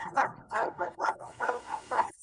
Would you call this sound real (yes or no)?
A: no